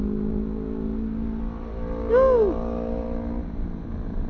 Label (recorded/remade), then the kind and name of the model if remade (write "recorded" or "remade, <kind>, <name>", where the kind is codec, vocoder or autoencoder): recorded